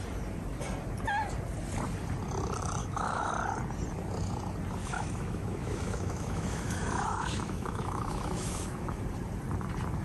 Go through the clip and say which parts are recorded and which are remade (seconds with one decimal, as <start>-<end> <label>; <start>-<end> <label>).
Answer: 0.0-2.8 recorded; 2.8-3.3 remade; 3.3-4.8 recorded; 4.8-9.0 remade; 9.0-10.0 recorded